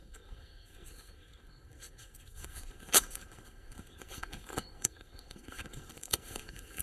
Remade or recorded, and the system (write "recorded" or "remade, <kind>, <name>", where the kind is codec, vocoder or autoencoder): remade, codec, SNAC